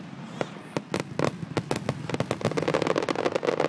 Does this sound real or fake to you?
real